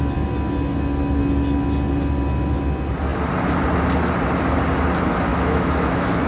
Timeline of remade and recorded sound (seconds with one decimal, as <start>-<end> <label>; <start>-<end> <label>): 0.0-5.3 recorded; 5.3-6.3 remade